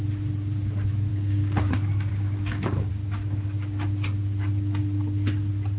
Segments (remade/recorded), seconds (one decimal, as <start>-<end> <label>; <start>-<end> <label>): 0.0-1.1 recorded; 1.1-1.7 remade; 1.7-2.1 recorded; 2.1-2.9 remade; 2.9-5.8 recorded

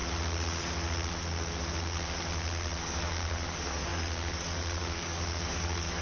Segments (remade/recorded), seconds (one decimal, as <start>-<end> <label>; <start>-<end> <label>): 0.0-2.8 recorded; 2.8-6.0 remade

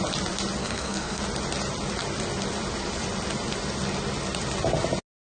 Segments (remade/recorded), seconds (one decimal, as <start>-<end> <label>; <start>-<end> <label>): 0.0-0.6 recorded; 0.6-1.2 remade; 1.2-5.3 recorded

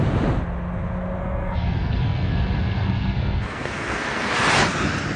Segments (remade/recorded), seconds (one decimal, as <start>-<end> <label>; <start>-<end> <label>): 0.0-1.2 recorded; 1.2-4.3 remade; 4.3-5.2 recorded

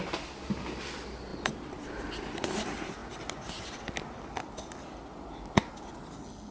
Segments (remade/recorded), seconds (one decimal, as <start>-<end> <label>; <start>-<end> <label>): 0.0-6.5 recorded